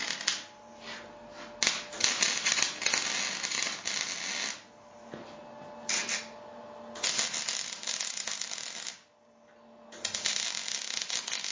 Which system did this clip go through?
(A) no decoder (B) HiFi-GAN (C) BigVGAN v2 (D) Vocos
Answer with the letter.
A